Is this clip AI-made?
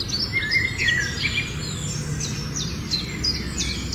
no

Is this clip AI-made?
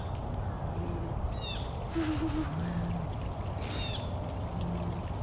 no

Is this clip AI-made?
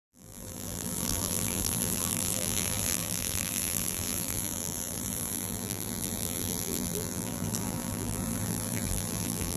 yes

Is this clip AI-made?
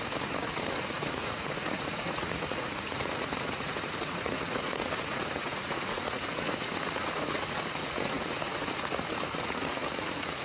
yes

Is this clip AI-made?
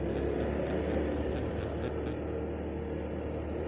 no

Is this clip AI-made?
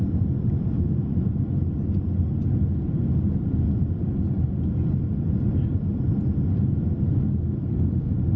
no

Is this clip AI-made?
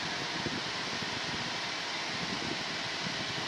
no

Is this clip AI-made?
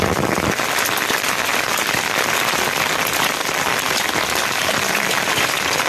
yes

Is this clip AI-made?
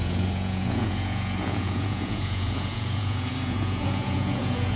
yes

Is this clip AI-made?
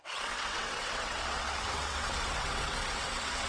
yes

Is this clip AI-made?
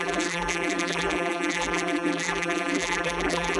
yes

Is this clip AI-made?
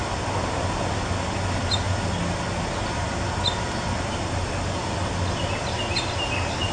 no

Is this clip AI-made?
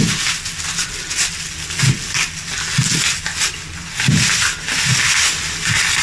no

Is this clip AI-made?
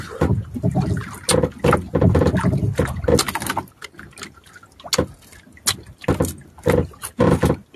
no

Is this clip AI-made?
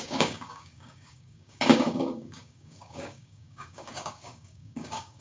yes